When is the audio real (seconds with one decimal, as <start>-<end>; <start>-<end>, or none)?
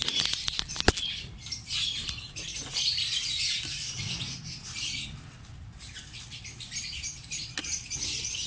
0.0-8.5